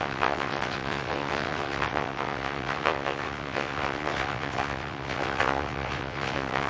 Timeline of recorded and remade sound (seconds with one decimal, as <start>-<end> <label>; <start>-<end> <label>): 0.0-6.7 remade